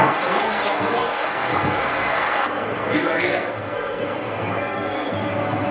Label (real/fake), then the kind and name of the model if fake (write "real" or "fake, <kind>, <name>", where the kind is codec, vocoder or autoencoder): fake, codec, SNAC